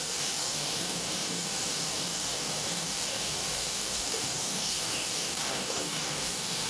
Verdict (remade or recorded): remade